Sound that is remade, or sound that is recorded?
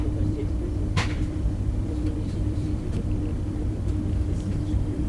remade